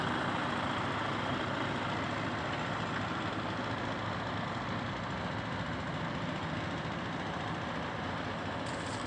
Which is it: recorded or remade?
recorded